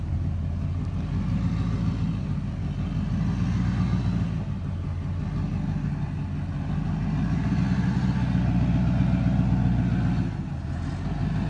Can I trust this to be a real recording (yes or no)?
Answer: yes